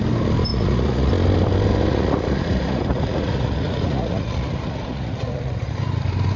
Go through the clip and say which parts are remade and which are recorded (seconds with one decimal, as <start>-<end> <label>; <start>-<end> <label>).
0.0-0.5 recorded; 0.5-1.1 remade; 1.1-1.9 recorded; 1.9-5.7 remade; 5.7-6.4 recorded